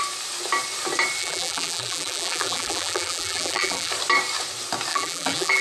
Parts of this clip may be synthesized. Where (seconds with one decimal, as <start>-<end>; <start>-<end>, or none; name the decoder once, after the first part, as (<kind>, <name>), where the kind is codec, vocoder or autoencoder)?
1.2-3.9 (vocoder, BigVGAN v2); 4.9-5.6